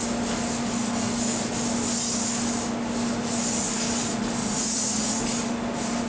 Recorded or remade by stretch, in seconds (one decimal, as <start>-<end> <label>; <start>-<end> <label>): 0.0-4.4 recorded; 4.4-5.2 remade; 5.2-6.1 recorded